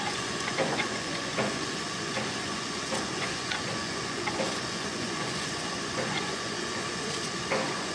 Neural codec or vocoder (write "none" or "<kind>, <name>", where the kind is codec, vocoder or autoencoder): vocoder, Vocos